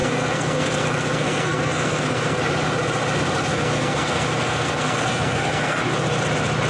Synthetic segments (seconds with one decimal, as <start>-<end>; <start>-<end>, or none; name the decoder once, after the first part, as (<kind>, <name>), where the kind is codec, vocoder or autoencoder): 0.0-2.4 (codec, SNAC); 3.5-5.8